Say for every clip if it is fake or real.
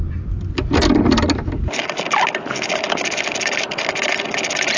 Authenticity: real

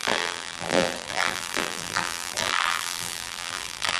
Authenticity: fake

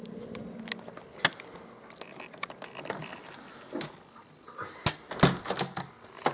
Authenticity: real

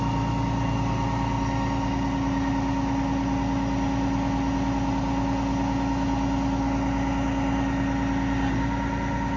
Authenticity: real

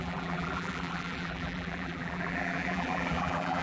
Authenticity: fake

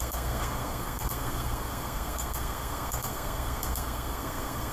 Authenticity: fake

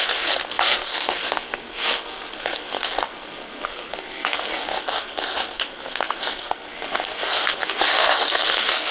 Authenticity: fake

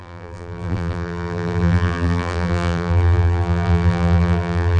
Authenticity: fake